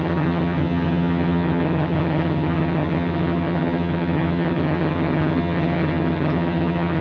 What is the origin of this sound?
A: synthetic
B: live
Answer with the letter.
A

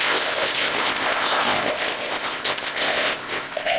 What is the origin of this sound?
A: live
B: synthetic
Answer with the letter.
B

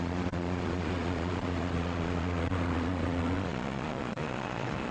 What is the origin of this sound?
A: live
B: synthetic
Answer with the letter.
B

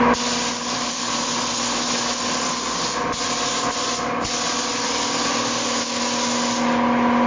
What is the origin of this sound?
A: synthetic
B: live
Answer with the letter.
B